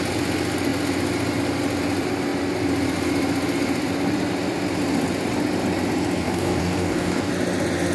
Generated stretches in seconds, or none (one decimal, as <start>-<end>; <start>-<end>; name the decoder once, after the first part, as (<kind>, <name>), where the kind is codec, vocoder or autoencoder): 6.2-7.3 (codec, DAC)